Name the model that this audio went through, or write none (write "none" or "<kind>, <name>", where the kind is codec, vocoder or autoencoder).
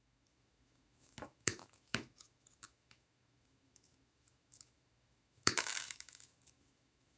autoencoder, DAC-VAE